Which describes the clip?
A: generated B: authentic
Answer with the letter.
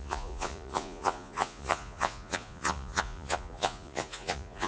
A